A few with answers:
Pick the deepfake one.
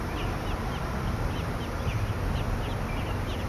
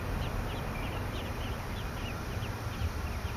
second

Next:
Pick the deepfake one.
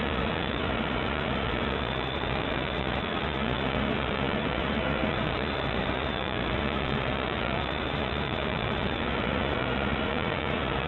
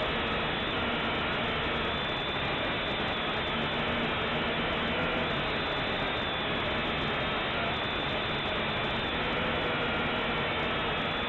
first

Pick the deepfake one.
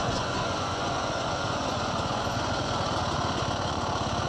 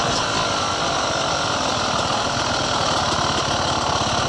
first